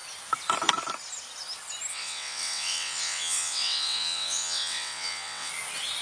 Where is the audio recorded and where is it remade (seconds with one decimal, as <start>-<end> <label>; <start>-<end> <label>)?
0.0-1.9 recorded; 1.9-5.5 remade; 5.5-6.0 recorded